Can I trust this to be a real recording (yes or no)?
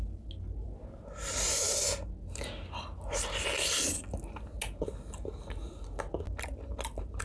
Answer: yes